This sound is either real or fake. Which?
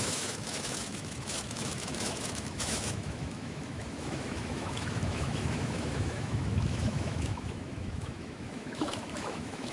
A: fake